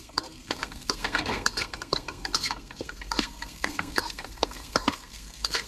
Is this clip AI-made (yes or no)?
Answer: yes